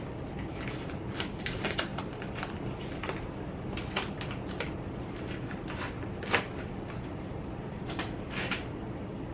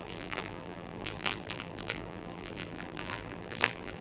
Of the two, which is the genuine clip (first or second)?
first